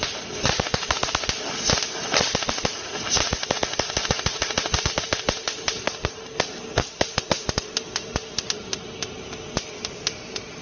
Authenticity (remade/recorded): recorded